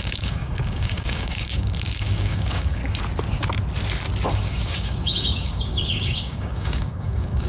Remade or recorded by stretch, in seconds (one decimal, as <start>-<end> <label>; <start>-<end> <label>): 0.0-2.8 remade; 2.8-4.3 recorded; 4.3-7.5 remade